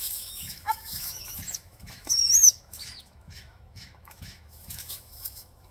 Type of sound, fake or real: fake